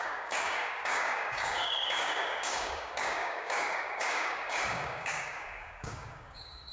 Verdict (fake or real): fake